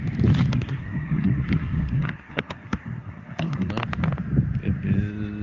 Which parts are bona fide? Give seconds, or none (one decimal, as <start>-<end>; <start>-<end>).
0.0-0.5; 3.7-5.4